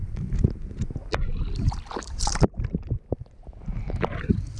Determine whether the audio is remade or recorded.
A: recorded